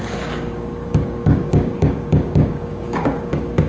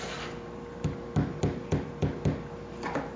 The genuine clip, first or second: second